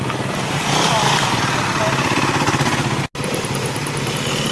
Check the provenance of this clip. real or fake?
real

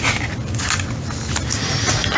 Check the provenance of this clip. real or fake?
real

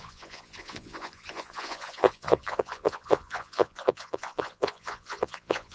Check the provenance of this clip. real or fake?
fake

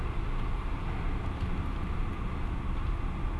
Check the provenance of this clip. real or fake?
real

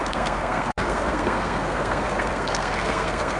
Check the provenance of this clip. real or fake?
fake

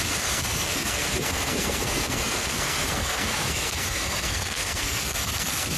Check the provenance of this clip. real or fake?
fake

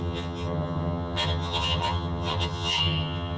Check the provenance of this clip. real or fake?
fake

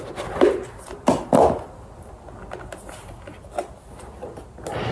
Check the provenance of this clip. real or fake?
real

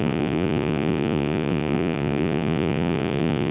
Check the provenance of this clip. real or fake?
fake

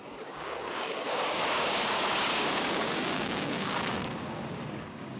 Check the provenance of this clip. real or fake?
fake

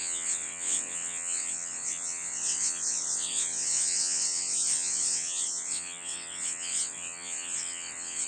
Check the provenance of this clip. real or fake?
fake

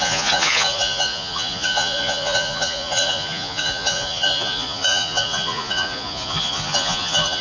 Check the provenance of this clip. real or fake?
fake